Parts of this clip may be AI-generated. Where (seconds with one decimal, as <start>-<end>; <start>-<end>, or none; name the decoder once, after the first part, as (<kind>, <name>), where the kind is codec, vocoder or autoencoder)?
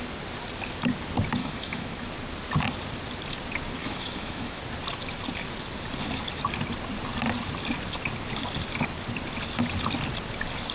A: 1.4-2.1 (autoencoder, DAC-VAE); 3.8-4.6